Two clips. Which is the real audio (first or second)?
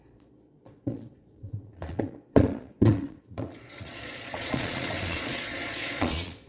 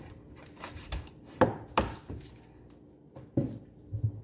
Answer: second